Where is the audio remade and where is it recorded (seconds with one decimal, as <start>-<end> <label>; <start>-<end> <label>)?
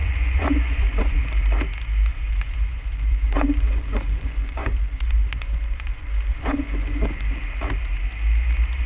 0.0-1.2 remade; 1.2-2.1 recorded; 2.1-7.3 remade; 7.3-8.9 recorded